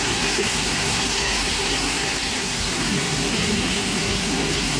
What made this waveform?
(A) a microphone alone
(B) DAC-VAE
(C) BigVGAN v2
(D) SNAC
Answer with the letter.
D